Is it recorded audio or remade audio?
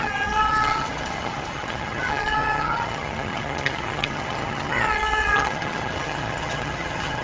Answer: remade